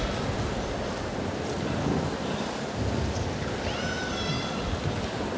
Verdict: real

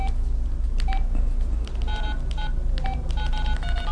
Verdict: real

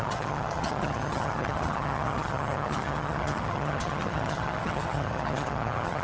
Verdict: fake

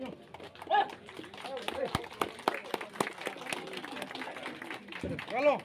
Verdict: real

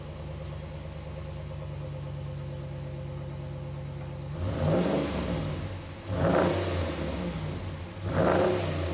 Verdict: real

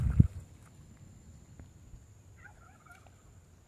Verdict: real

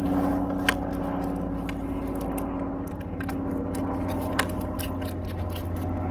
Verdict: real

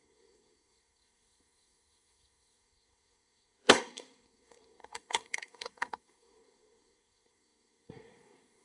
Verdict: fake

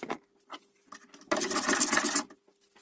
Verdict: real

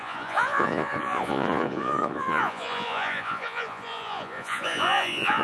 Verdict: fake